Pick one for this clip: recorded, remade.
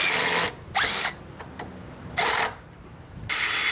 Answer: recorded